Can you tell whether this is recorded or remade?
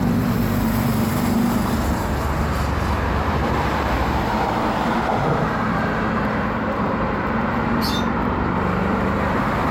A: remade